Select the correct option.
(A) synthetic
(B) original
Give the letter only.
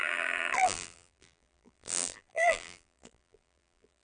A